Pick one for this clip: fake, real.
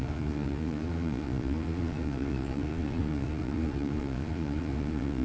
fake